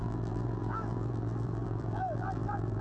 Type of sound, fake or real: fake